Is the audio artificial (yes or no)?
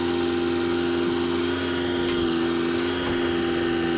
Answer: no